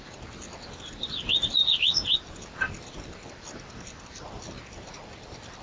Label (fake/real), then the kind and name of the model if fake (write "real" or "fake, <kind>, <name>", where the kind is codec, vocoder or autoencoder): real